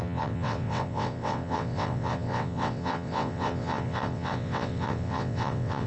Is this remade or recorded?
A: remade